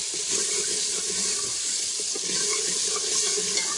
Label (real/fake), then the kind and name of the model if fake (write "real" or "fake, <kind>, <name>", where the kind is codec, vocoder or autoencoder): real